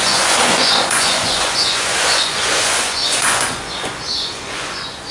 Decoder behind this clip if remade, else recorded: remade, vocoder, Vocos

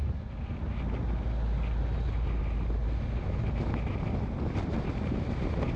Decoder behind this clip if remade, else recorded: recorded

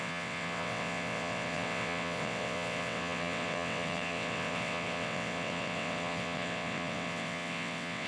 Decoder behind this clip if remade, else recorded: remade, vocoder, WaveNeXt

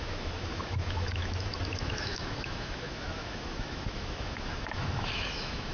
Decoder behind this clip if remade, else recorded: remade, autoencoder, DAC-VAE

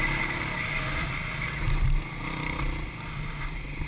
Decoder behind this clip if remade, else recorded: recorded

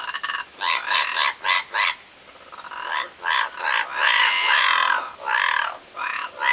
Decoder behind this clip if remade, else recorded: recorded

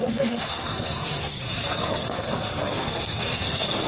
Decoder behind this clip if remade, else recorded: remade, codec, SNAC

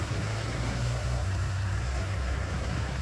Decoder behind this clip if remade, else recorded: remade, codec, SNAC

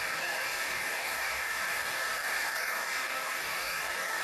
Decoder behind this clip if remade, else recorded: remade, codec, DAC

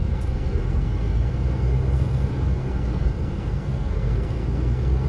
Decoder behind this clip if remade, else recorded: remade, codec, SNAC